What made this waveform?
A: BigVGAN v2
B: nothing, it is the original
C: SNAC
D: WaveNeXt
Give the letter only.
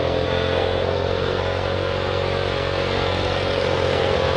C